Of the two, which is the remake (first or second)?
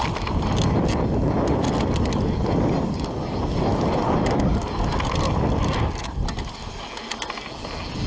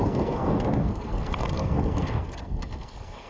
second